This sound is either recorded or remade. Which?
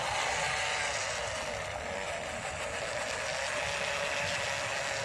recorded